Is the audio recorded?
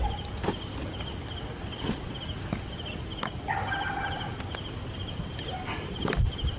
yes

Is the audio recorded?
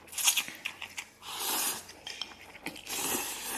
yes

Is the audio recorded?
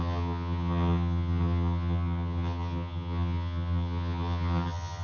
no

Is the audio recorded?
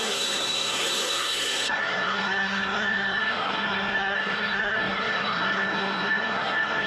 no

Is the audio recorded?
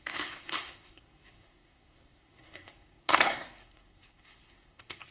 no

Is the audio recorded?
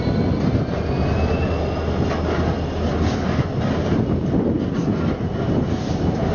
yes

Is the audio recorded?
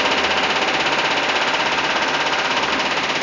yes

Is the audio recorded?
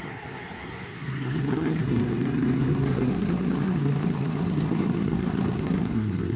no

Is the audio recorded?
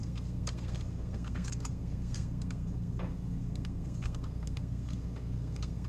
no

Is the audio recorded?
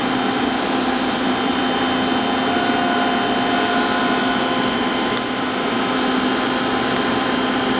yes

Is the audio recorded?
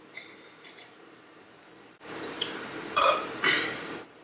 no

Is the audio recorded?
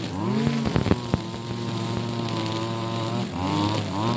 yes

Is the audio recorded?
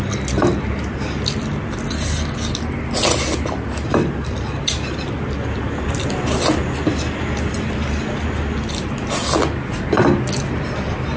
yes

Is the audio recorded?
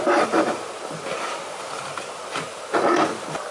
yes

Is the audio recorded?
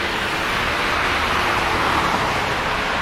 yes